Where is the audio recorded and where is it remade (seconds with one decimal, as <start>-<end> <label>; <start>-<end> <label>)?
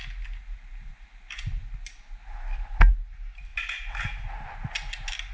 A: 0.0-5.3 recorded